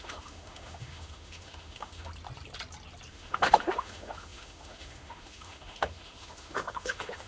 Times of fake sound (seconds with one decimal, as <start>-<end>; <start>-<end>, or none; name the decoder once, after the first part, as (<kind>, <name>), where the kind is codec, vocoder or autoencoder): 0.0-2.1 (autoencoder, DAC-VAE); 3.1-7.3